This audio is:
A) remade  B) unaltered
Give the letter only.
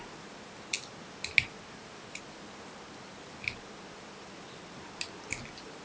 B